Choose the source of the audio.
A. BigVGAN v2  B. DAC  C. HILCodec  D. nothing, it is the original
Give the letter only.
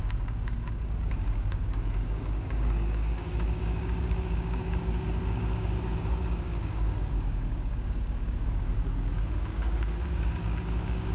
B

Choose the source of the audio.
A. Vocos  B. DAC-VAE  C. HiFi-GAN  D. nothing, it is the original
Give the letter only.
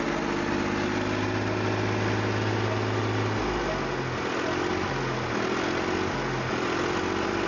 D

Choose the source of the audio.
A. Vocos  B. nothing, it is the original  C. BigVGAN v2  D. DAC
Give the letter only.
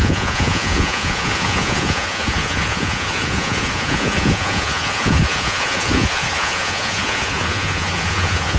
A